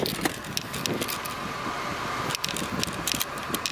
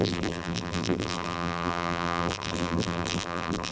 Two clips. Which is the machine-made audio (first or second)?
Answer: second